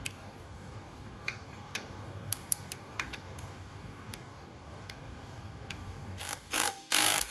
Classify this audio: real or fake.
fake